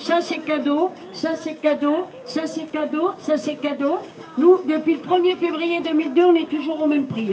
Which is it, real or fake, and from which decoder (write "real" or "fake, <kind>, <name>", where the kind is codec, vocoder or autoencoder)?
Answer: fake, codec, DAC